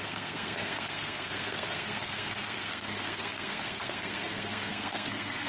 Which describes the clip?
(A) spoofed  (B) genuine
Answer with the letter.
A